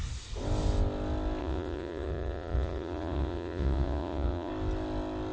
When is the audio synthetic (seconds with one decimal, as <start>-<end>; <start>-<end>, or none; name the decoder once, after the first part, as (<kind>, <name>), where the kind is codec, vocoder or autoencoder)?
1.4-4.5 (vocoder, Vocos)

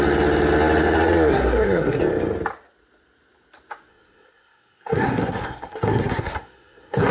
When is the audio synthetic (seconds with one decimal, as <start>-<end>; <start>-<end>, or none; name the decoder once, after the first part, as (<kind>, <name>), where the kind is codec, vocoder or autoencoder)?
1.3-2.0 (codec, SNAC); 3.9-7.1

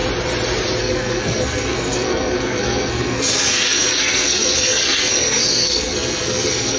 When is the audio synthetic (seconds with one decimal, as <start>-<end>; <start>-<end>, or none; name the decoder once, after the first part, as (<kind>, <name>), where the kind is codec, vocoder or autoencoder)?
0.8-6.8 (codec, SNAC)

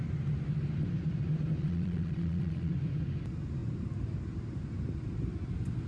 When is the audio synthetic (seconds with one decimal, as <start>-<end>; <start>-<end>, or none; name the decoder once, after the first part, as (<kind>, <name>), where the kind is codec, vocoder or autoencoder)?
1.6-2.7 (vocoder, Vocos)

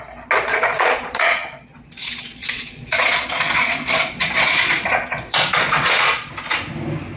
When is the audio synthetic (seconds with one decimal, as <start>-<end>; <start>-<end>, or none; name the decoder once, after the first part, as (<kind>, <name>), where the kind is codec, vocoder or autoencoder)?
0.5-1.6 (vocoder, Vocos); 2.0-6.3

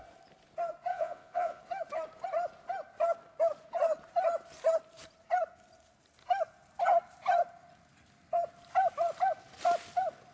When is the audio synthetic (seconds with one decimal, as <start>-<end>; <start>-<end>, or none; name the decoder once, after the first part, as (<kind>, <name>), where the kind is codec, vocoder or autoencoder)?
0.9-1.6 (vocoder, Vocos)